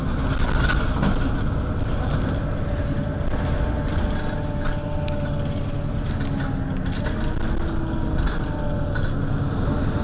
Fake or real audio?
real